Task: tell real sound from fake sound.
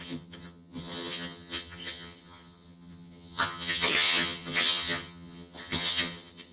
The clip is fake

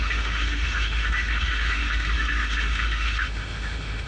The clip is fake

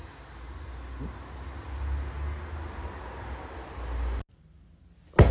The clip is real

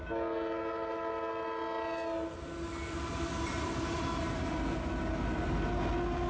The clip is real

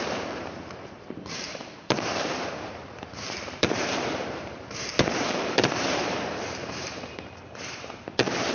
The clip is fake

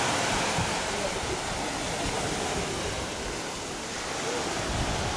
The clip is real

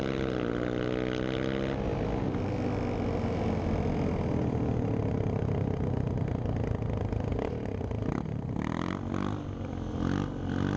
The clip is real